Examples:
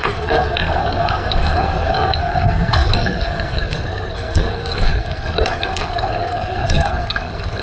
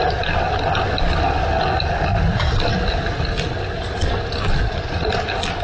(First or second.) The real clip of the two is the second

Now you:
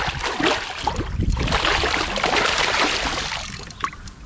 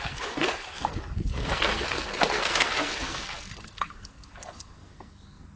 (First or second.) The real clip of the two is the first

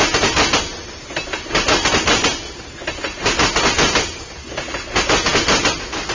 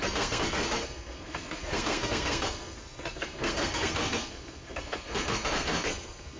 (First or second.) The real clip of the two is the first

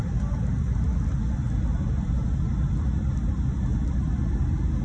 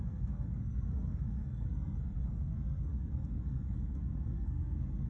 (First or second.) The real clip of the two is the first